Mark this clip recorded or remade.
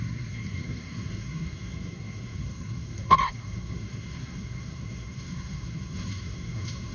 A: remade